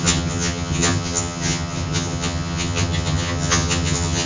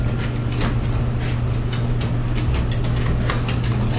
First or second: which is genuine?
second